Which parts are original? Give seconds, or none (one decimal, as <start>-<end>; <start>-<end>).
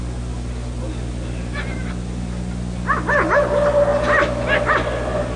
0.0-5.4